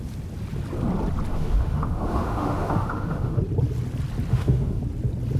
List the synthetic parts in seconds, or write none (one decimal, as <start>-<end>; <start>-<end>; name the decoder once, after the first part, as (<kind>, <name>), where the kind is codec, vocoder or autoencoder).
1.3-3.4 (autoencoder, DAC-VAE); 4.3-4.8